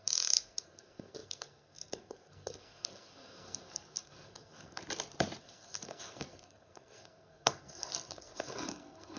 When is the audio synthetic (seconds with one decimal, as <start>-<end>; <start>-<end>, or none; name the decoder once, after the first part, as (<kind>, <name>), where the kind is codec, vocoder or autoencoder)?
0.0-4.8 (codec, SNAC); 5.4-9.2